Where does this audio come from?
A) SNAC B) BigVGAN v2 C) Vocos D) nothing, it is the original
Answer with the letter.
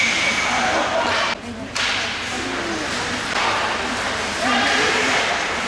D